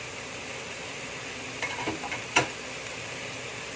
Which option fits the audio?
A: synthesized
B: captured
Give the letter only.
B